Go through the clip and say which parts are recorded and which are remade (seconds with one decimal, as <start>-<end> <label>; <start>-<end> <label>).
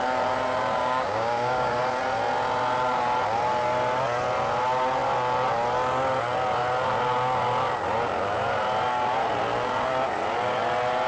0.0-0.8 recorded; 0.8-1.8 remade; 1.8-11.1 recorded